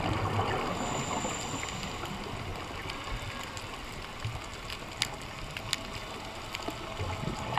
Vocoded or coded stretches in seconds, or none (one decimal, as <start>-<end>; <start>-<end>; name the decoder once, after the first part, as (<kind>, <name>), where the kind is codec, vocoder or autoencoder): none